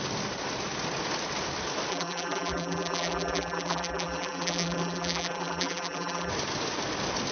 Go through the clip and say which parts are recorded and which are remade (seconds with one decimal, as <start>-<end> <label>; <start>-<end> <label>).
0.0-1.9 recorded; 1.9-6.3 remade; 6.3-7.3 recorded

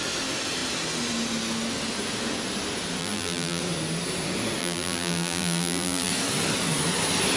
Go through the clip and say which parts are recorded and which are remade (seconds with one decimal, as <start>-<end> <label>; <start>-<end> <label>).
0.0-3.0 recorded; 3.0-3.6 remade; 3.6-4.6 recorded; 4.6-6.1 remade; 6.1-7.4 recorded

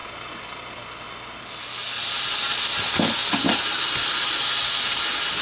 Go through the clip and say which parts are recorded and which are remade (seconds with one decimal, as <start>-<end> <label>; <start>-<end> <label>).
0.0-5.4 recorded